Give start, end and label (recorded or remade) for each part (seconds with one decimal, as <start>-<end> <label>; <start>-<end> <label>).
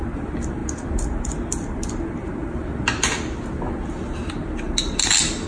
0.0-5.5 recorded